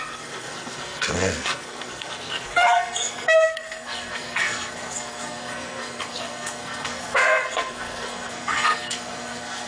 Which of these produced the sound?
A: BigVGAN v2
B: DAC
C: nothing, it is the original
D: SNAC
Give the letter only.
D